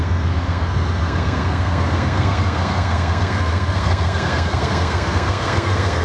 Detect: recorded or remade remade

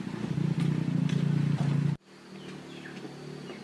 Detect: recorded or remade recorded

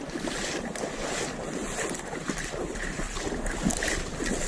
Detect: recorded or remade recorded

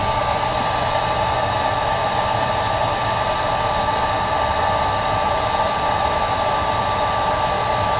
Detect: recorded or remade recorded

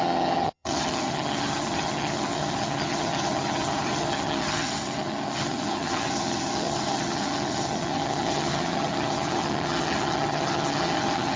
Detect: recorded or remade remade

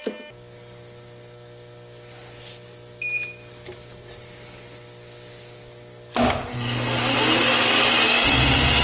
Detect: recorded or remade recorded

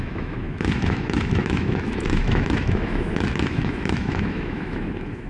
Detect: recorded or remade remade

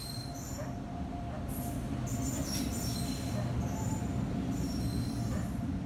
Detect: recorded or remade recorded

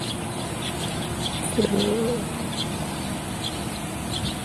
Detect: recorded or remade recorded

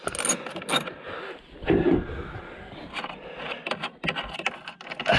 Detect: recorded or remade recorded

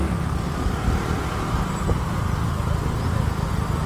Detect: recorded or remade recorded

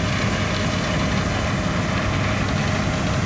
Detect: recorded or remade recorded